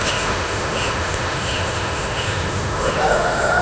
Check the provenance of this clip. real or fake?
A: fake